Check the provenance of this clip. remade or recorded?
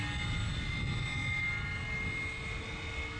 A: recorded